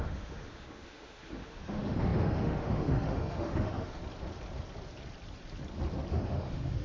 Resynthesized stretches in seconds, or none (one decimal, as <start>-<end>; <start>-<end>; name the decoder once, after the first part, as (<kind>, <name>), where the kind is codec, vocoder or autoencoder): 0.0-4.0 (autoencoder, DAC-VAE); 6.1-6.8